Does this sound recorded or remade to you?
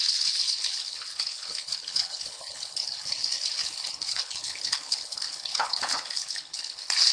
remade